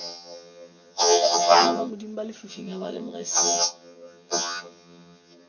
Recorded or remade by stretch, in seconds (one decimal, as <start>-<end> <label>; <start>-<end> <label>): 0.0-1.9 remade; 1.9-2.5 recorded; 2.5-5.5 remade

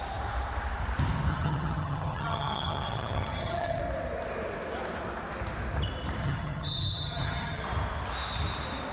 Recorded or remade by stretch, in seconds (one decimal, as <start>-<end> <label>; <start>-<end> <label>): 0.0-1.3 recorded; 1.3-3.8 remade; 3.8-6.2 recorded; 6.2-7.6 remade; 7.6-8.9 recorded

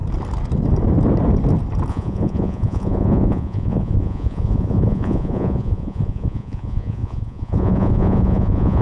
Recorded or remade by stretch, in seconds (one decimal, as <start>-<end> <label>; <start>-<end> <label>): 0.0-1.9 recorded; 1.9-8.8 remade

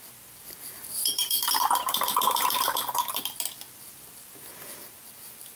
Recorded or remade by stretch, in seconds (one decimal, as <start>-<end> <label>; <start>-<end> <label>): 0.0-0.4 recorded; 0.4-3.2 remade; 3.2-5.6 recorded

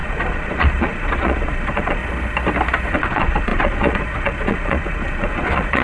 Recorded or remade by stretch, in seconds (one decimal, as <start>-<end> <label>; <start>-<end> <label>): 0.0-2.0 remade; 2.0-2.9 recorded; 2.9-5.8 remade

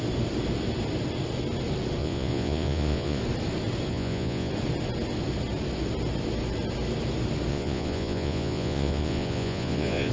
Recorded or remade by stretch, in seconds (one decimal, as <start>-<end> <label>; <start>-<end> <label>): 0.0-2.0 recorded; 2.0-3.2 remade; 3.2-3.9 recorded; 3.9-4.5 remade; 4.5-7.5 recorded; 7.5-10.1 remade

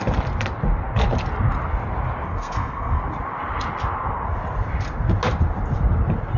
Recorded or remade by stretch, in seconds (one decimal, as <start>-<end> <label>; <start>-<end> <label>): 0.0-2.3 recorded; 2.3-3.0 remade; 3.0-6.4 recorded

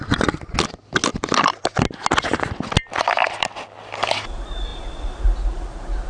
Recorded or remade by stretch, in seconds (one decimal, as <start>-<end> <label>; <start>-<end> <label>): 0.0-6.1 recorded